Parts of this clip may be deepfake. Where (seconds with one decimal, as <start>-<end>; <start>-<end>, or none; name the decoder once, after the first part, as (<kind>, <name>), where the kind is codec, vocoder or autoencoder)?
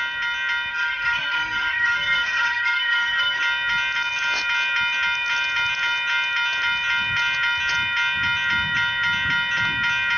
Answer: 0.7-3.4 (codec, SNAC)